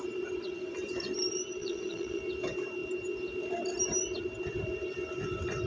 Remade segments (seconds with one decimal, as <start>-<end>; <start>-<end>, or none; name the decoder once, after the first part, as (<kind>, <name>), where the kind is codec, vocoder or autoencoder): 1.6-2.2 (vocoder, WaveNeXt)